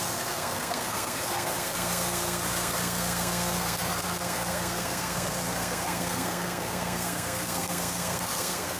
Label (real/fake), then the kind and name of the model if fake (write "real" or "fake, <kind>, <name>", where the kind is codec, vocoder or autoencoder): fake, codec, SNAC